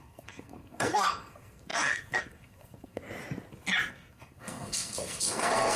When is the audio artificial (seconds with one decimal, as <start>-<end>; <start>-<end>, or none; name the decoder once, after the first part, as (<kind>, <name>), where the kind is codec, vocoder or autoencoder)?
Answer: 0.0-3.0 (codec, SNAC); 3.9-5.8